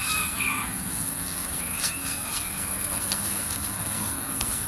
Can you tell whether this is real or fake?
fake